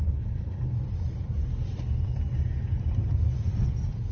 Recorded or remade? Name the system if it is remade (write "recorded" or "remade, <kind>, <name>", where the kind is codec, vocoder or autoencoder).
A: recorded